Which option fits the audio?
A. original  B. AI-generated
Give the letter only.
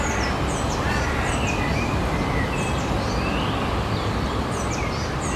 A